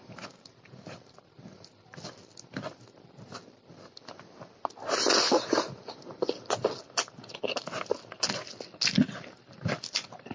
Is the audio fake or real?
real